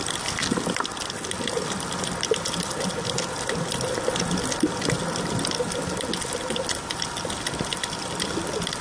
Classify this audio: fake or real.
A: real